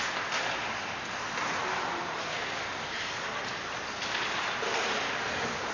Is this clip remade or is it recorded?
recorded